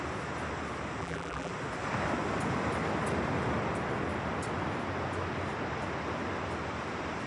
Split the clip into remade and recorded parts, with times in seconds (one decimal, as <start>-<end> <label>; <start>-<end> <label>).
0.0-1.0 recorded; 1.0-1.5 remade; 1.5-7.3 recorded